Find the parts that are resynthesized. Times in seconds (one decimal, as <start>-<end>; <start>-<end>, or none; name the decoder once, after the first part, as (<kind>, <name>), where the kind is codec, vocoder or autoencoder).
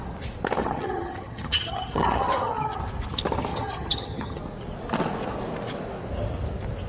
0.6-2.8 (vocoder, HiFi-GAN); 3.5-4.4